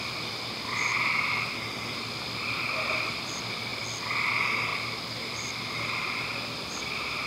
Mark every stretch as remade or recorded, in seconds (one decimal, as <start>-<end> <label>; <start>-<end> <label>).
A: 0.0-0.9 remade; 0.9-1.6 recorded; 1.6-3.7 remade; 3.7-4.3 recorded; 4.3-7.3 remade